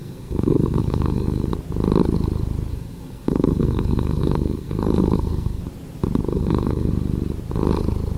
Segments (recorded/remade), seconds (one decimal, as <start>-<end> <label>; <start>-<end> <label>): 0.0-1.5 remade; 1.5-2.7 recorded; 2.7-5.6 remade; 5.6-6.3 recorded; 6.3-6.9 remade; 6.9-8.2 recorded